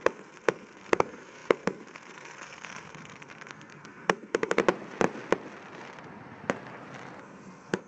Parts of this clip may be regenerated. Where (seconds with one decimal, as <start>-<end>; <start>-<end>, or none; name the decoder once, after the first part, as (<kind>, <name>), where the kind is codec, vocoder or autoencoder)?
0.0-4.6 (codec, SNAC); 7.2-7.9